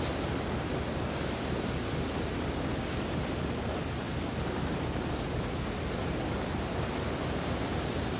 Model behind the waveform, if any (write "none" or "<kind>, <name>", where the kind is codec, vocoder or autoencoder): none